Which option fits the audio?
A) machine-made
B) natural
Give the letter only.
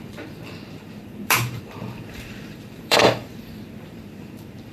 A